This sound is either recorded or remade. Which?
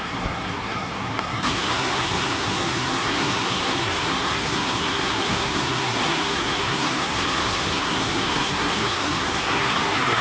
remade